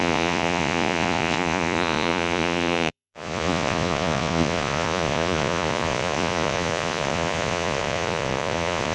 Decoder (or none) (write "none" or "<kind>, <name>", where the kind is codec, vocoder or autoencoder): vocoder, Vocos